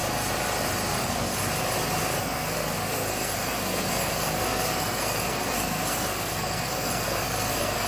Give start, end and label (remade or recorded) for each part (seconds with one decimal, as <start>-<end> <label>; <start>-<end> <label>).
0.0-0.9 recorded; 0.9-1.4 remade; 1.4-2.2 recorded; 2.2-7.9 remade